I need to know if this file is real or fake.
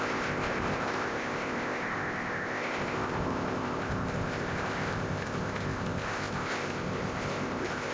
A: fake